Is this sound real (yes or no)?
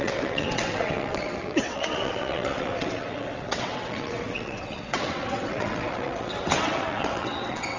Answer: no